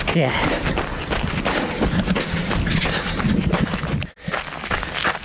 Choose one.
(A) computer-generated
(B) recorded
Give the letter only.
B